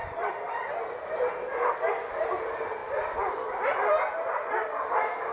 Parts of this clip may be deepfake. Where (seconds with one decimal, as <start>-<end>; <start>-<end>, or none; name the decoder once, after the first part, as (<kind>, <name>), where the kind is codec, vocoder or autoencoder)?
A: none